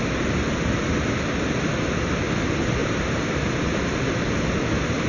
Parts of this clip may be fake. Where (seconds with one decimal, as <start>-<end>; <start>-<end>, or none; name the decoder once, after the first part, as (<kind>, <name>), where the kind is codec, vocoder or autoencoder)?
2.8-3.9 (vocoder, BigVGAN v2)